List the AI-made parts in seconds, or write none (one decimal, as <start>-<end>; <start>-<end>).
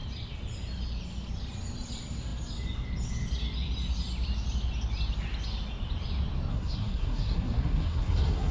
6.5-8.5